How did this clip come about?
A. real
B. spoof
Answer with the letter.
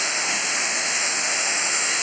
B